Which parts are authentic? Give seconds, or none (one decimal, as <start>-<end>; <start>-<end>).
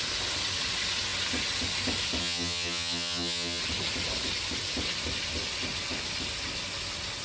0.0-2.2; 3.6-7.2